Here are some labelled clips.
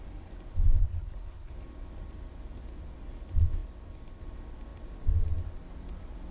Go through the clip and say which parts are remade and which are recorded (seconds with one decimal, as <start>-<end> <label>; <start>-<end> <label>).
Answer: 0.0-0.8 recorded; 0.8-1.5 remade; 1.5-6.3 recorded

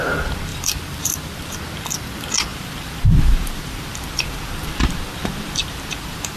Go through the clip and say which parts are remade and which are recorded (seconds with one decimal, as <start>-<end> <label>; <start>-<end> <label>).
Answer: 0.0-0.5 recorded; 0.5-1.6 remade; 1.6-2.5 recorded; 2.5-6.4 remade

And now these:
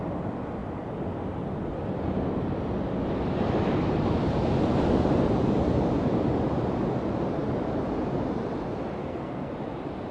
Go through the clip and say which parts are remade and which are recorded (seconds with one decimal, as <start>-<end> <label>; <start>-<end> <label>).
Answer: 0.0-9.0 recorded; 9.0-9.5 remade; 9.5-10.1 recorded

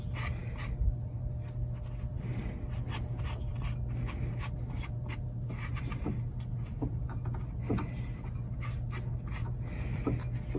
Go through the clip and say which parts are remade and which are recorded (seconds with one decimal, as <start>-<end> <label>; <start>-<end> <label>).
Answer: 0.0-10.6 recorded